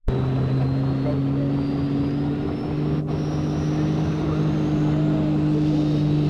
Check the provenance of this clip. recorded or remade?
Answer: recorded